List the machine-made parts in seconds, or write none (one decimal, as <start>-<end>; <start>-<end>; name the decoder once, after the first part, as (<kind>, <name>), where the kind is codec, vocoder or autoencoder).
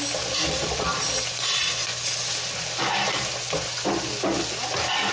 none